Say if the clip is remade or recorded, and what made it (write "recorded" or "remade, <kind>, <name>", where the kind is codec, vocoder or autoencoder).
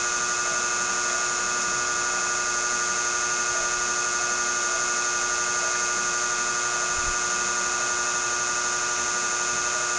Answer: recorded